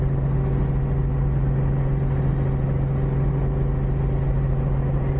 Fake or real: real